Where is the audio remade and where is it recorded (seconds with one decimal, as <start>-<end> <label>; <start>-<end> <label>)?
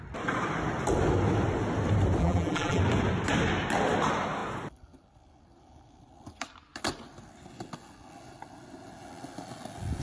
0.0-2.2 recorded; 2.2-2.8 remade; 2.8-10.0 recorded